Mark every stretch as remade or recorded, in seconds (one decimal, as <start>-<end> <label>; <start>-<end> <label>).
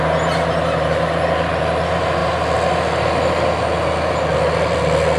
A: 0.0-5.2 recorded